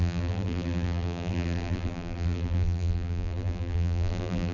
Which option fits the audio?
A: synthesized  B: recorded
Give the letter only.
A